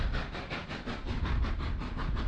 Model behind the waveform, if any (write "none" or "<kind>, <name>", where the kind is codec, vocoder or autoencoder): none